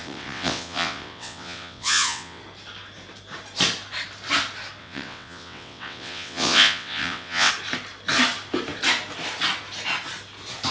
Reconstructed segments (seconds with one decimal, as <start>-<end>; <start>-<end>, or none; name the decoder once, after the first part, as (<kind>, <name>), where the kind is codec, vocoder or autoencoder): 0.0-2.4 (vocoder, WaveNeXt); 4.8-7.5